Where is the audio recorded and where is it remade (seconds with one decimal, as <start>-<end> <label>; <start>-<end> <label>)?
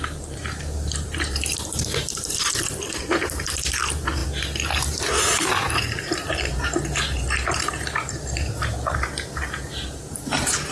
0.0-10.7 remade